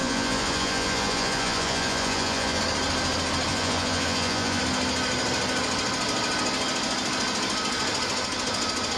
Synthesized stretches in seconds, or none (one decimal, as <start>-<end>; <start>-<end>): 0.0-2.6; 3.5-4.6